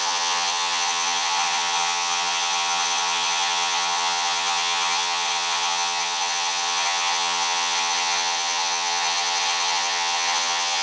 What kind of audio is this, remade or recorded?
remade